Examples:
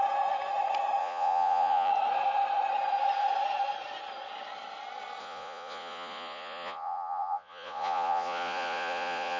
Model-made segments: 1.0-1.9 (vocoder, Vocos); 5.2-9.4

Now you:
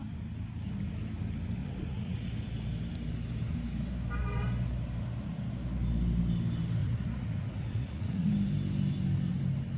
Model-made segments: 1.6-2.3 (vocoder, Vocos); 6.8-8.3

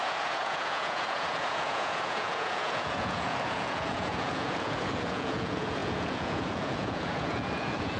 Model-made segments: 0.0-8.0 (vocoder, Vocos)